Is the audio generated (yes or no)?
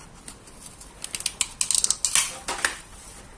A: no